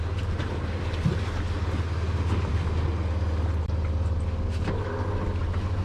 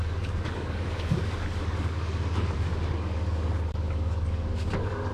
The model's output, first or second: second